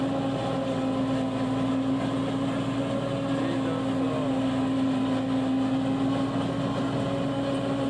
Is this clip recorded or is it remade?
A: recorded